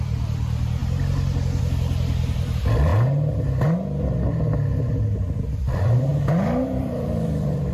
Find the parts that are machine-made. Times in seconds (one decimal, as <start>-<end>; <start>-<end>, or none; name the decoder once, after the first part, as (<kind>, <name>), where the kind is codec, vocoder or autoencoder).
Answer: 0.0-0.8 (vocoder, BigVGAN v2); 1.6-2.9; 5.3-6.1; 6.8-7.7